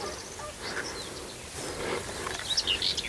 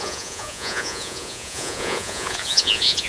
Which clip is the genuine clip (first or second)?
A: first